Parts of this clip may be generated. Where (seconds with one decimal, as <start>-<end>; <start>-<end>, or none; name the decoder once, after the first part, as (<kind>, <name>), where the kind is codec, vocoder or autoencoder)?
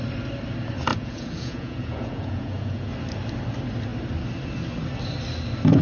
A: 0.9-2.9 (vocoder, Vocos)